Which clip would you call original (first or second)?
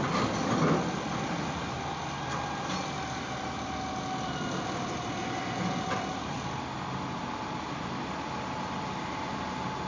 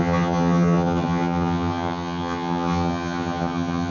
first